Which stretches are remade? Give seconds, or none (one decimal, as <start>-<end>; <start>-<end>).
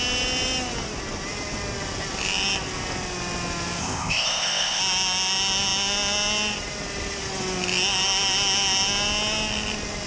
3.8-4.8